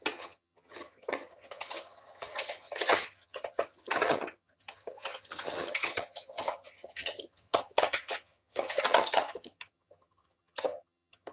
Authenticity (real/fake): fake